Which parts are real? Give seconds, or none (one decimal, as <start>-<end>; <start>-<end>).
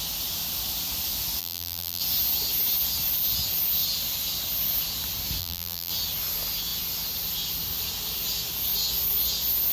0.0-1.4; 2.0-5.4; 5.9-9.7